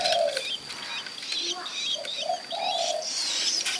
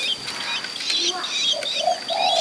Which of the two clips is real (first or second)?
second